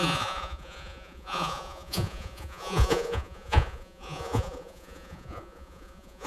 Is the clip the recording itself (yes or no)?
no